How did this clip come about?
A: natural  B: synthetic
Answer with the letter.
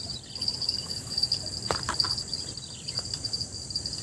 A